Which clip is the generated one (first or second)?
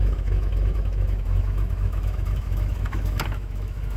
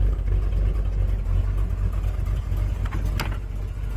first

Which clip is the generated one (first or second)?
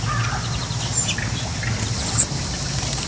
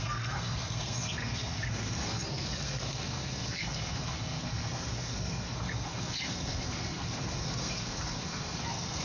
second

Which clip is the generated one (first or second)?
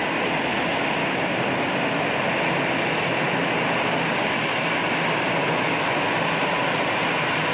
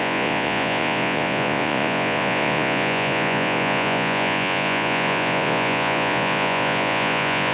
second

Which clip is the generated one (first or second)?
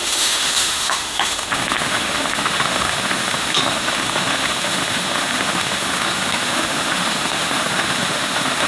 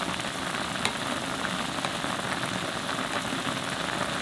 first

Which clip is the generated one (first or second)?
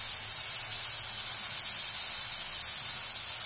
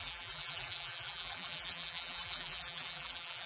second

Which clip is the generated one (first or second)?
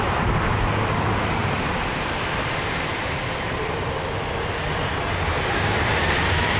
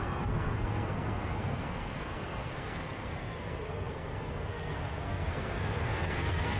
second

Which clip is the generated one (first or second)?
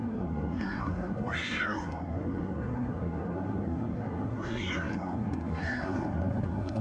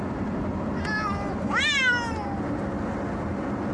first